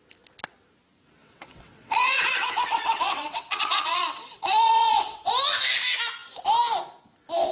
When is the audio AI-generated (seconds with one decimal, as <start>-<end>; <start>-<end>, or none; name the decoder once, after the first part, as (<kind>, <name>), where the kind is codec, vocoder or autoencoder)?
1.2-5.3 (vocoder, WaveNeXt)